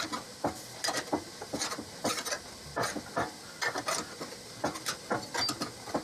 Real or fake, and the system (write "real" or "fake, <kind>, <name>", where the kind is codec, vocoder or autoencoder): real